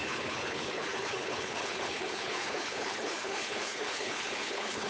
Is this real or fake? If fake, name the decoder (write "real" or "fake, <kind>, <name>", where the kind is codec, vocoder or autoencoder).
fake, codec, HILCodec